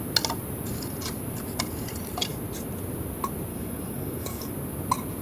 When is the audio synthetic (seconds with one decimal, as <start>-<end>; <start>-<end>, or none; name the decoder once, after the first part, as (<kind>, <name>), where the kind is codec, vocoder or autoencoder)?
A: 3.5-4.5 (codec, DAC)